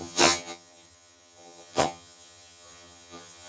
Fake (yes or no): yes